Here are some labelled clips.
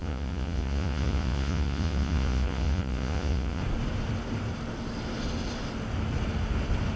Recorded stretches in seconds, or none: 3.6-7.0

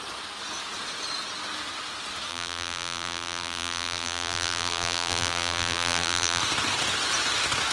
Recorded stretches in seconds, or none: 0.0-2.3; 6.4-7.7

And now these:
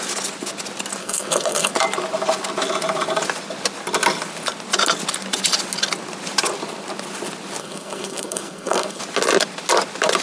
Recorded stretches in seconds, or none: 0.0-1.0; 1.7-7.6; 9.0-10.2